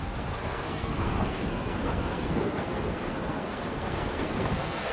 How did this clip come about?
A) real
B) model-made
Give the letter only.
B